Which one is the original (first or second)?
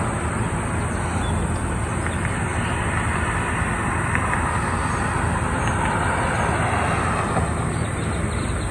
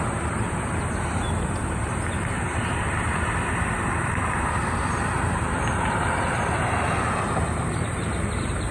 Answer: first